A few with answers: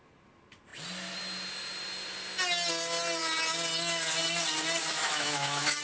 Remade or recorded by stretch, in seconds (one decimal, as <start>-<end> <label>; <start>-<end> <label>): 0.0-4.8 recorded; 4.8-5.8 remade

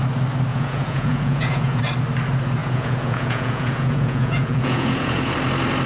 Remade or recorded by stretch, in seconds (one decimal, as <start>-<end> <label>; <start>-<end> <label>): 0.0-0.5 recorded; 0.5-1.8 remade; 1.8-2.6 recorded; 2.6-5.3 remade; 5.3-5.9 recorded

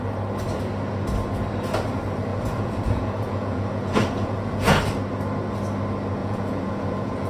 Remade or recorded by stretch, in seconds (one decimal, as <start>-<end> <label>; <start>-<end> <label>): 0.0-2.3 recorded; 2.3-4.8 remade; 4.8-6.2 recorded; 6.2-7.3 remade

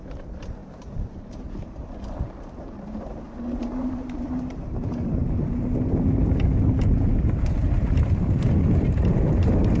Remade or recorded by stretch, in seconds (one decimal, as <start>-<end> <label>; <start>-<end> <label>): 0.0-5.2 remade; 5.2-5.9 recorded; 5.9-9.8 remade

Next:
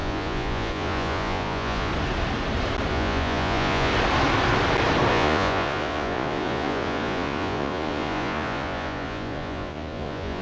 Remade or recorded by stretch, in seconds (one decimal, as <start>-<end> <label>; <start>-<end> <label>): 0.0-1.9 remade; 1.9-2.9 recorded; 2.9-3.9 remade; 3.9-5.1 recorded; 5.1-10.4 remade

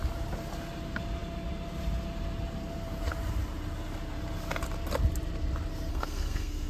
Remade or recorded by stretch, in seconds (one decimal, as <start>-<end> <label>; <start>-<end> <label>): 0.0-5.9 recorded; 5.9-6.7 remade

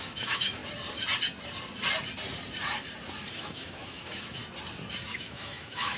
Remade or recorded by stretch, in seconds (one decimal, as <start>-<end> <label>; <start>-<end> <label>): 0.0-0.6 remade; 0.6-3.3 recorded; 3.3-4.4 remade; 4.4-5.1 recorded; 5.1-6.0 remade